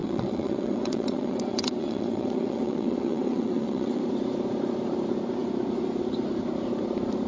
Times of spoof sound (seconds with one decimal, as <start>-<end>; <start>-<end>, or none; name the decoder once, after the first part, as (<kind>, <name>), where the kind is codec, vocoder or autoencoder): 0.0-4.0 (vocoder, WaveNeXt)